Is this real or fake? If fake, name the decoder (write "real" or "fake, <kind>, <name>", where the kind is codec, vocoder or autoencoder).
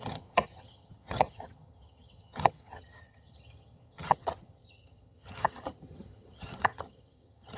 fake, vocoder, HiFi-GAN